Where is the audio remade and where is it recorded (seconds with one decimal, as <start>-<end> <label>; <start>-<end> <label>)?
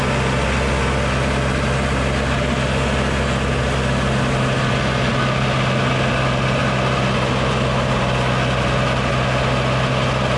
0.0-10.4 recorded